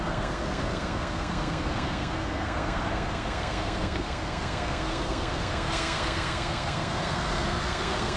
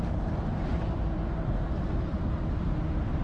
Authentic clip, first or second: second